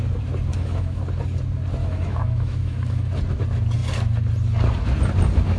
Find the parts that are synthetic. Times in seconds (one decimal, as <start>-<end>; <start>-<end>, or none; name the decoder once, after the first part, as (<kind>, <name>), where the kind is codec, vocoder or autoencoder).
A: 0.5-1.0 (autoencoder, DAC-VAE); 1.8-3.2